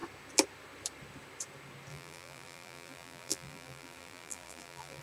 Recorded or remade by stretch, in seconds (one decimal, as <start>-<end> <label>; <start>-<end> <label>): 0.0-1.9 recorded; 1.9-5.0 remade